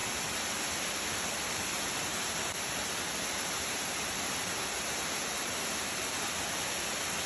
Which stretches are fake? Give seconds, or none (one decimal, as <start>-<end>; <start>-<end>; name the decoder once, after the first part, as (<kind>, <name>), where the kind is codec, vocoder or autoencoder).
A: 2.1-6.3 (vocoder, BigVGAN v2)